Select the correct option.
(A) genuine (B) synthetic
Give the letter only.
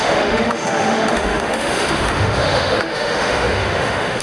B